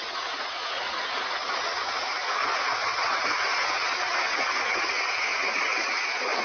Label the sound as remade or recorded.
remade